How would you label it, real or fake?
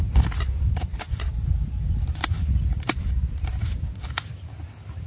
real